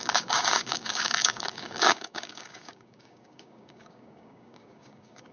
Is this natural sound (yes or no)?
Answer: no